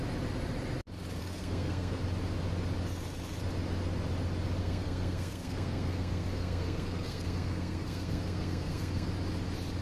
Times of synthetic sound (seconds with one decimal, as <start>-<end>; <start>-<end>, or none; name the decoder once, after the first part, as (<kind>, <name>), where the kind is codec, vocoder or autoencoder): 1.2-2.0 (codec, SNAC); 4.6-9.1

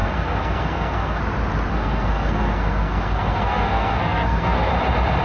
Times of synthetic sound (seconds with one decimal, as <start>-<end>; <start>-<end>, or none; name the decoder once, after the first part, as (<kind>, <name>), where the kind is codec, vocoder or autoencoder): 0.0-1.2 (codec, SNAC); 1.7-4.7

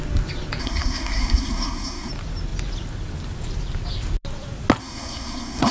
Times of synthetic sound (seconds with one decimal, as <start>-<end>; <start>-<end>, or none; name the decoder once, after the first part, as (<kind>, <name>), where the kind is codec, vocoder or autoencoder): 0.6-2.1 (codec, SNAC); 4.8-5.7

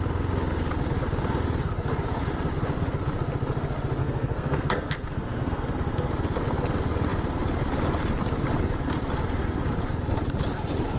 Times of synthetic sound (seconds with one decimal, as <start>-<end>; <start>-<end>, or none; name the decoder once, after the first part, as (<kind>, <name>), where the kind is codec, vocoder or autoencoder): 4.0-6.1 (codec, SNAC)

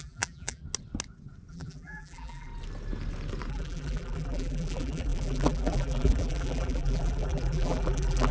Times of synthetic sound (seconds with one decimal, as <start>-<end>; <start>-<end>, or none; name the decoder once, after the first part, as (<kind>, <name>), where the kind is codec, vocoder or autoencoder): 0.0-0.6 (vocoder, BigVGAN v2); 1.5-2.5; 3.5-8.3

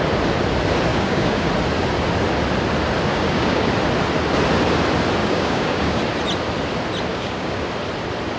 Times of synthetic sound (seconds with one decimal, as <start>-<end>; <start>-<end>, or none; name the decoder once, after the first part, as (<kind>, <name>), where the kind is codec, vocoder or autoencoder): 0.9-1.5 (codec, DAC); 3.1-3.7; 5.2-6.0; 7.1-7.6

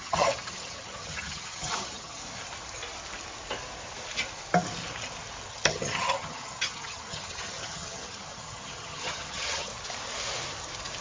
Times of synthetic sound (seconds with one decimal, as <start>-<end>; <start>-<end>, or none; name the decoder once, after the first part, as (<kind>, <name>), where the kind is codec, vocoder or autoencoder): 0.0-2.2 (vocoder, HiFi-GAN); 5.5-9.7